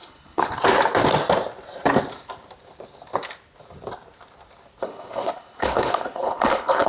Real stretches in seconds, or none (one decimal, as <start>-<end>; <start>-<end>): 0.6-4.8